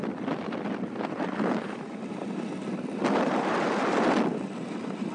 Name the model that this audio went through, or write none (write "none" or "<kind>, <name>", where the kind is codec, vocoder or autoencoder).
none